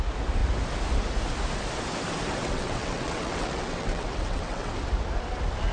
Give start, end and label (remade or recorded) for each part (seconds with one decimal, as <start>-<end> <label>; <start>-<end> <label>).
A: 0.0-2.4 recorded; 2.4-4.7 remade; 4.7-5.7 recorded